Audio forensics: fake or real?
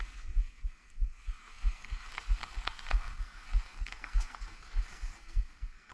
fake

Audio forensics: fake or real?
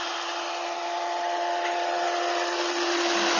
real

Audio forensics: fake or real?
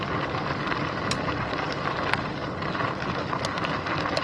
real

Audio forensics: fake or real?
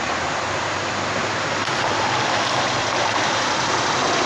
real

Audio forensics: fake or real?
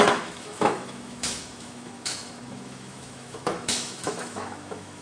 fake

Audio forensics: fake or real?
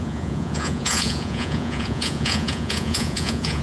fake